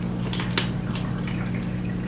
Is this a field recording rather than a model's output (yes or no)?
yes